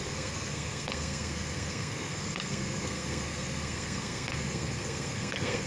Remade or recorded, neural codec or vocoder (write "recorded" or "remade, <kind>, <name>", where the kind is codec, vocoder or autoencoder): remade, codec, SNAC